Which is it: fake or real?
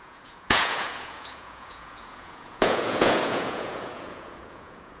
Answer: fake